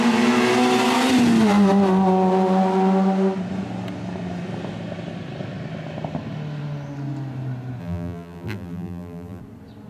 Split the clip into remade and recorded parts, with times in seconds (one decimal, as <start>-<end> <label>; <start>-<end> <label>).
0.0-7.8 recorded; 7.8-9.4 remade; 9.4-9.9 recorded

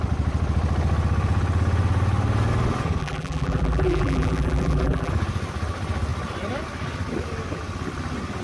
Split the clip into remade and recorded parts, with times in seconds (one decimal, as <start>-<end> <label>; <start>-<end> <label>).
0.0-3.0 recorded; 3.0-5.1 remade; 5.1-8.4 recorded

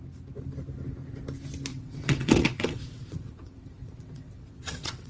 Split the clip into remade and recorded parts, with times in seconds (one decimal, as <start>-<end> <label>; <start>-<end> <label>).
0.0-1.7 recorded; 1.7-5.1 remade